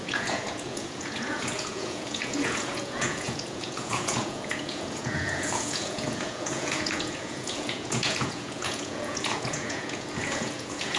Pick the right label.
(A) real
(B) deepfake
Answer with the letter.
B